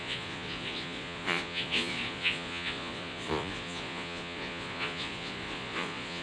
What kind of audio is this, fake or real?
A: fake